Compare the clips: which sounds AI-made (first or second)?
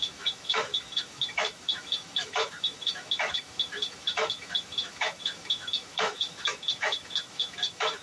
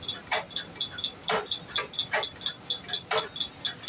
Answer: first